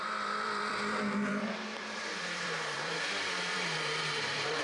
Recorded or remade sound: remade